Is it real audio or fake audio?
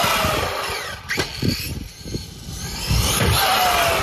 real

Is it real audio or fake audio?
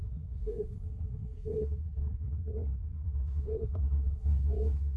fake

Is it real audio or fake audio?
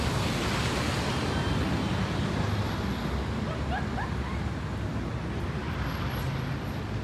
real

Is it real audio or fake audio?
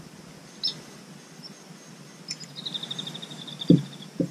real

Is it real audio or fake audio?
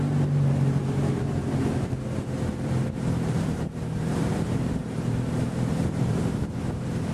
fake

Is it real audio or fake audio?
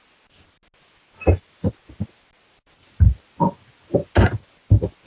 real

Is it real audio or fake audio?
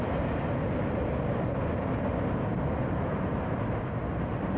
real